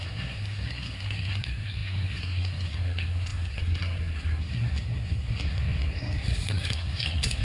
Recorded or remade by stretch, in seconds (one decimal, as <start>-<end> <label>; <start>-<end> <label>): 0.0-7.4 remade

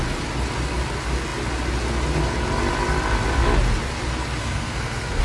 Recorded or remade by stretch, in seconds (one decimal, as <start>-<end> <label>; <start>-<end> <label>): 0.0-4.4 recorded; 4.4-5.2 remade

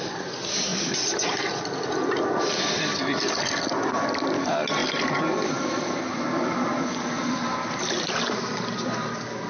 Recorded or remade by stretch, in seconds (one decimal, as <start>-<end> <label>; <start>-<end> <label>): 0.0-9.5 recorded

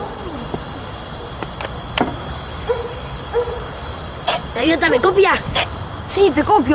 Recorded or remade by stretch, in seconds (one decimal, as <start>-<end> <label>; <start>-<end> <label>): 0.0-6.7 remade